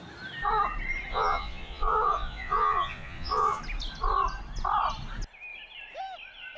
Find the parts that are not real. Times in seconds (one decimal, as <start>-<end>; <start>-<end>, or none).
1.1-3.6